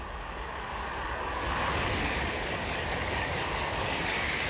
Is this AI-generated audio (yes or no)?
yes